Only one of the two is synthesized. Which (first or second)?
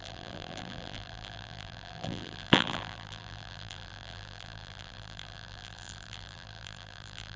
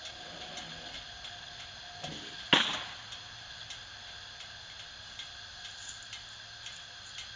first